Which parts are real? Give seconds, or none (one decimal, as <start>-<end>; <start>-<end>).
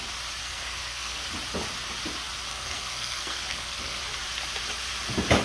0.0-0.4; 1.3-2.5; 4.0-5.4